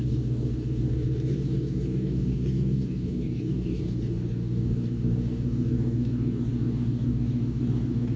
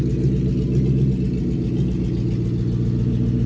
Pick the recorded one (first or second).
second